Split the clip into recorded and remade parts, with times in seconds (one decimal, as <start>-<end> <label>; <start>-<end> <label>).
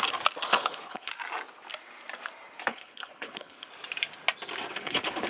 0.0-0.5 recorded; 0.5-1.1 remade; 1.1-2.7 recorded; 2.7-3.7 remade; 3.7-4.7 recorded; 4.7-5.3 remade